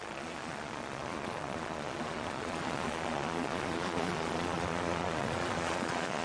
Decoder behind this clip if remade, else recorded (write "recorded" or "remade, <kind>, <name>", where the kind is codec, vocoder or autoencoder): remade, vocoder, Vocos